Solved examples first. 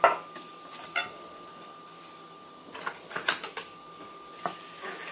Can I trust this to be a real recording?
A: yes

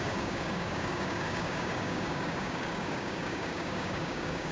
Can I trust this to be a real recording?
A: no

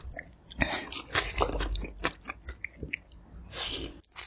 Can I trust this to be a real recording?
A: yes